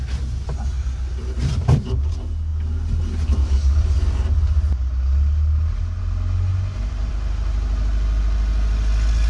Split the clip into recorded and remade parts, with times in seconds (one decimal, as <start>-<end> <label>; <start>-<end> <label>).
0.0-6.5 recorded; 6.5-7.1 remade; 7.1-9.3 recorded